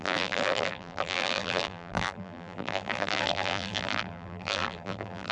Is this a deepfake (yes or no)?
yes